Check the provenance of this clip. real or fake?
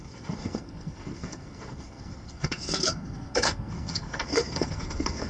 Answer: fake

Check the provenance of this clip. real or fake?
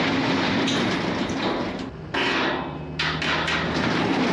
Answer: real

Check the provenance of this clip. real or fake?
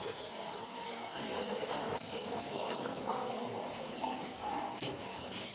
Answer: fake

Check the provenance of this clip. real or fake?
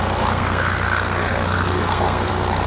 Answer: fake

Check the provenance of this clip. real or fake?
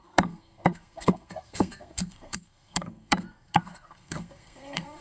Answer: fake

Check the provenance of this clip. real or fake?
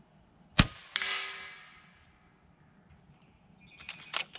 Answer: real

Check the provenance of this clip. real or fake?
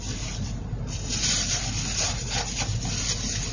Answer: real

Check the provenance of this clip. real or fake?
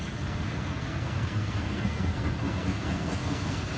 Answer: fake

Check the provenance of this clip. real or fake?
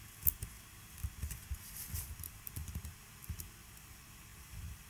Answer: real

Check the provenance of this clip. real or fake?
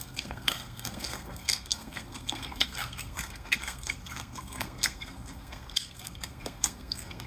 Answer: fake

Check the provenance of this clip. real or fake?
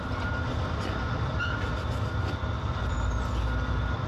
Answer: real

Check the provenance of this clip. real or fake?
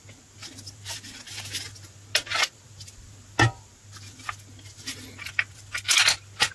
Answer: real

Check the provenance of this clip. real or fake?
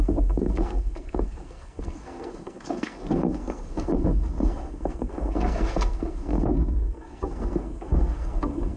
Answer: fake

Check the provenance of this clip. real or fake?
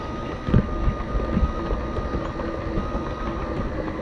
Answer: real